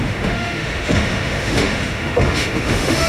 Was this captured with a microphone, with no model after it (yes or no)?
no